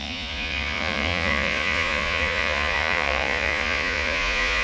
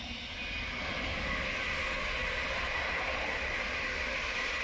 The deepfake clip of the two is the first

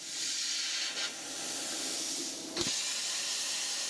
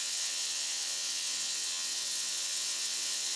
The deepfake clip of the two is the second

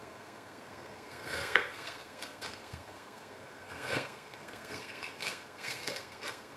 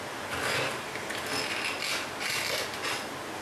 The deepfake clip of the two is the first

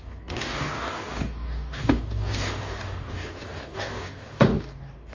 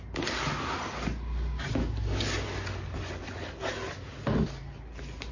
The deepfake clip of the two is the first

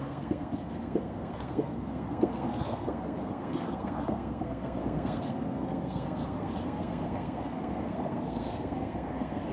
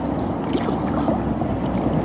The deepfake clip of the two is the first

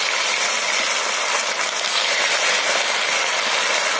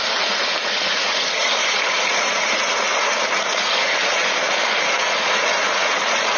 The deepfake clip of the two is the second